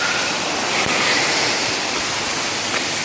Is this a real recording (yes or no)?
yes